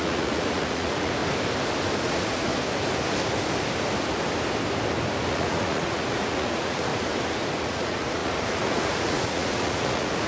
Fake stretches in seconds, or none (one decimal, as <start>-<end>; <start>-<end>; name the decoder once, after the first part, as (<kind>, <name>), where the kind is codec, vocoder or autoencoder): 0.0-1.2 (vocoder, Vocos); 2.0-2.5; 5.3-6.9; 7.6-10.3